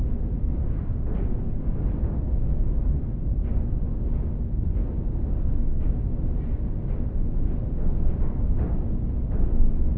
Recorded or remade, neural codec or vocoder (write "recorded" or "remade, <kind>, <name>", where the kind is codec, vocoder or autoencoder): recorded